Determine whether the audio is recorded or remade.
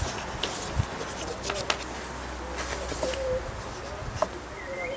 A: recorded